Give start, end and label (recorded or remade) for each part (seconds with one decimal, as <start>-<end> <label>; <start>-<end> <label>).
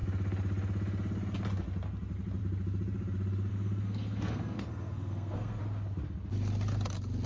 0.0-3.5 recorded; 3.5-5.6 remade; 5.6-7.3 recorded